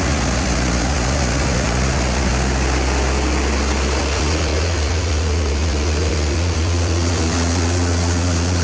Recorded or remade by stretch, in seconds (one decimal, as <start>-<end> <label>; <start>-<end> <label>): 0.0-2.3 remade; 2.3-4.0 recorded; 4.0-8.6 remade